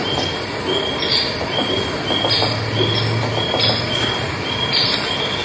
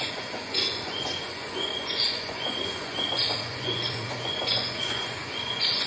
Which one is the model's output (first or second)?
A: second